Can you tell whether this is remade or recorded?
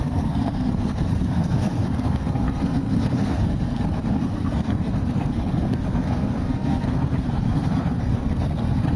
remade